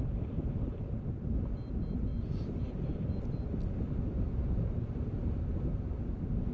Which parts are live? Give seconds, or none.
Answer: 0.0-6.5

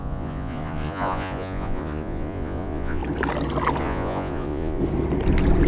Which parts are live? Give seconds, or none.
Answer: 3.0-3.8; 4.8-5.7

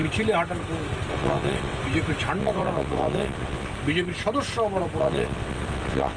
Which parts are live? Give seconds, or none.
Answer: 0.0-1.1; 1.8-2.4; 3.7-5.0

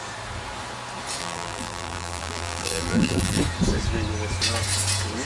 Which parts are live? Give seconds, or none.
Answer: 0.0-1.2; 3.4-5.3

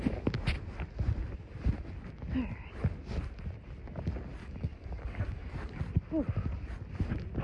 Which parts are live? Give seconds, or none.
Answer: 0.0-4.4; 5.8-7.4